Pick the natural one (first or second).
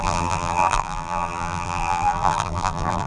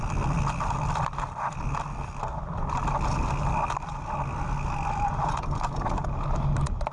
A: second